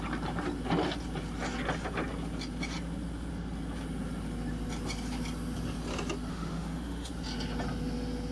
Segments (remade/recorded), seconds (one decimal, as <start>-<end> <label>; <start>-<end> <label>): 0.0-6.3 recorded; 6.3-7.1 remade; 7.1-8.3 recorded